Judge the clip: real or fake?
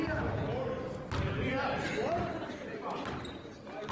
real